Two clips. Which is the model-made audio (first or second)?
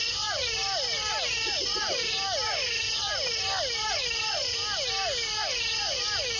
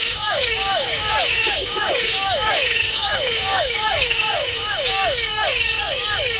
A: second